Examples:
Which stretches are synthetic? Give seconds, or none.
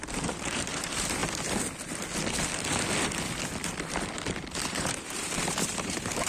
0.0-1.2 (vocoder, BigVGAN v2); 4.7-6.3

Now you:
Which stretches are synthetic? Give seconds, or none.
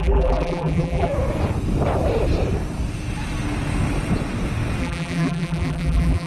0.0-1.1 (vocoder, BigVGAN v2); 4.8-6.3